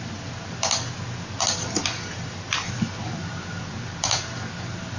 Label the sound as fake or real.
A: real